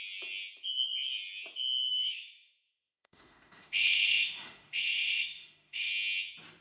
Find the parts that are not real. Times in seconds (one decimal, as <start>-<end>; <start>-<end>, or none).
1.9-5.9